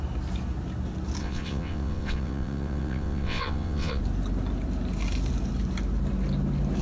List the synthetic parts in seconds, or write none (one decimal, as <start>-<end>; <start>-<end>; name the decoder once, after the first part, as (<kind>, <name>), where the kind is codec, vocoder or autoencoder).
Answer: 1.2-4.0 (vocoder, WaveNeXt)